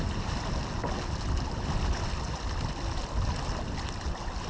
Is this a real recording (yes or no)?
yes